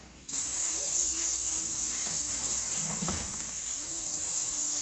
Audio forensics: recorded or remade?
remade